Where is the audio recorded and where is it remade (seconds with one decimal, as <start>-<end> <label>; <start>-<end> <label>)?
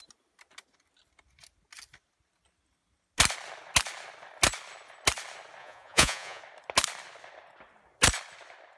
0.0-5.6 recorded; 5.6-6.4 remade; 6.4-8.8 recorded